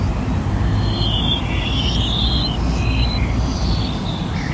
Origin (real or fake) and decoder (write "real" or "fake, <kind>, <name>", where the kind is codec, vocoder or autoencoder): real